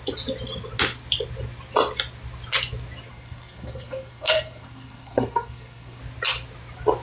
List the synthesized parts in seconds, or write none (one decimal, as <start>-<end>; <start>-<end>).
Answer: 3.1-6.0